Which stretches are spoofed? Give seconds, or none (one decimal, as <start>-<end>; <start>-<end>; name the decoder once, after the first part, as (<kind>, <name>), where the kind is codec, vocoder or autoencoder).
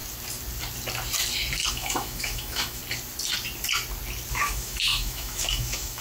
1.7-2.8 (autoencoder, DAC-VAE); 4.3-6.0